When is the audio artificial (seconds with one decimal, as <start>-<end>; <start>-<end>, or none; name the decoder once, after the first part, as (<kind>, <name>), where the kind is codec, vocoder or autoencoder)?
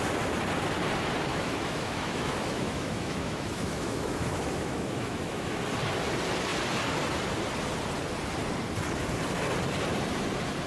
1.3-5.6 (autoencoder, DAC-VAE)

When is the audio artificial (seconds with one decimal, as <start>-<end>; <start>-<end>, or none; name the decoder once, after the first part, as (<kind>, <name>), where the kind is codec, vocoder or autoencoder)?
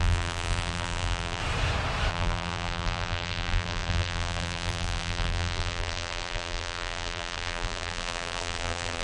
0.0-1.4 (vocoder, BigVGAN v2); 2.1-9.0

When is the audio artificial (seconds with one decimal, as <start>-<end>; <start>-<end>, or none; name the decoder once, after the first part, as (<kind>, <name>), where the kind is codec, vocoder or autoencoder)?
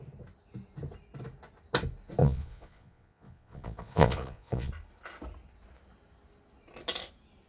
2.2-4.7 (vocoder, Vocos)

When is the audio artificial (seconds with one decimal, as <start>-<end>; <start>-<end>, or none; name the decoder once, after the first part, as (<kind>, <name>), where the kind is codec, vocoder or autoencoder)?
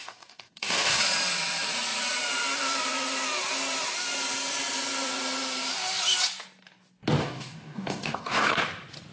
0.0-1.0 (codec, DAC); 7.2-8.6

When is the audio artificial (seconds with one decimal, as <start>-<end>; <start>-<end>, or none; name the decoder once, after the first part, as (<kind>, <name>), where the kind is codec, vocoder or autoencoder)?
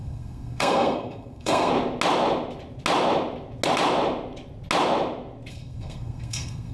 0.0-1.7 (codec, SNAC); 5.5-6.7